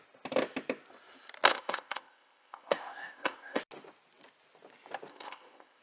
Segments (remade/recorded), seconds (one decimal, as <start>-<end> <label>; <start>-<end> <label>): 0.0-1.5 recorded; 1.5-3.6 remade; 3.6-5.1 recorded; 5.1-5.8 remade